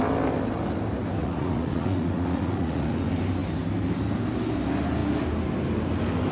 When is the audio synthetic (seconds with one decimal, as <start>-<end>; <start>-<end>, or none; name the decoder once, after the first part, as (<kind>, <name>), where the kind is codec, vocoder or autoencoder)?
1.2-3.0 (vocoder, Vocos)

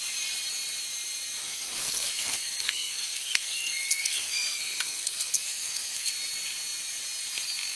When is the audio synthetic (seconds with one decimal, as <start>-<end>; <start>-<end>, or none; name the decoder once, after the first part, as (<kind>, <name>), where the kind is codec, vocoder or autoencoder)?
1.4-6.1 (codec, SNAC)

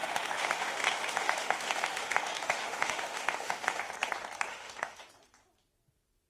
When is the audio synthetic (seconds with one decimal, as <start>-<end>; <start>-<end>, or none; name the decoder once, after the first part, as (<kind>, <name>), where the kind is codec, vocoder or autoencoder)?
0.0-3.8 (autoencoder, DAC-VAE); 4.5-5.1

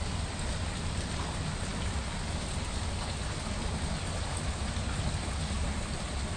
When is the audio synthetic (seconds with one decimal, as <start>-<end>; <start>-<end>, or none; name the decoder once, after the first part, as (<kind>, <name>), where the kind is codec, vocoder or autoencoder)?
none

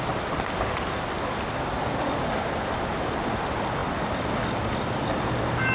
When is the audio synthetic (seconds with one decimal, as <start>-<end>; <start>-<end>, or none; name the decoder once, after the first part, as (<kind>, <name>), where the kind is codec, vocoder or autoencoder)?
none

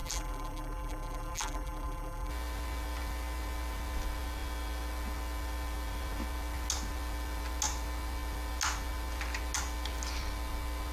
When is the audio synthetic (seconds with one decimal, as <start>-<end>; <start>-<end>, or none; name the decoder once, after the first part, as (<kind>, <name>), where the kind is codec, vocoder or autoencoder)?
0.0-2.3 (vocoder, BigVGAN v2)